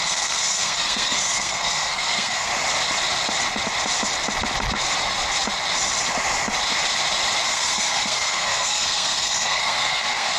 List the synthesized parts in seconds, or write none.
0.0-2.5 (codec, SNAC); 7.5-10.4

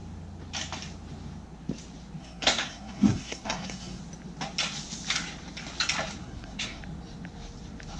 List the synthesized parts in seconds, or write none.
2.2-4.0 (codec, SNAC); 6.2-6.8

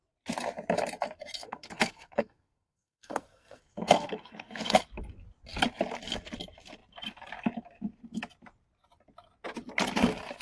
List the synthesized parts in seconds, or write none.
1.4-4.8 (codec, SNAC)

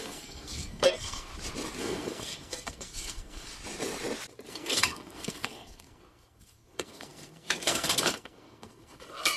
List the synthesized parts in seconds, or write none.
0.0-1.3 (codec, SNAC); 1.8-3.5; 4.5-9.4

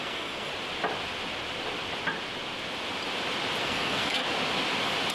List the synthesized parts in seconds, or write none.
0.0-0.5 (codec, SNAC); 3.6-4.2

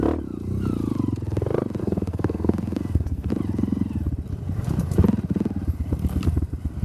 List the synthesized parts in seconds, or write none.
1.8-3.3 (codec, SNAC)

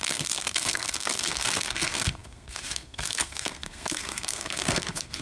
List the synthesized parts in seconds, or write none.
0.0-5.2 (codec, SNAC)

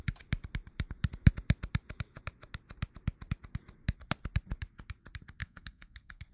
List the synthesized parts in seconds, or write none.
5.4-6.3 (codec, SNAC)